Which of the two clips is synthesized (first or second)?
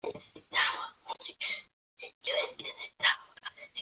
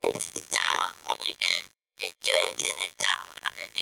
second